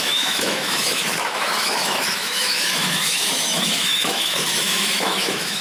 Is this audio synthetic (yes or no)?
yes